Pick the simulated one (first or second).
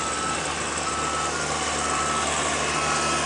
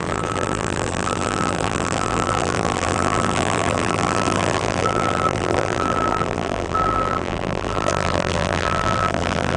second